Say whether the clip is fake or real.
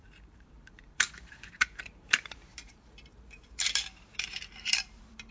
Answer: fake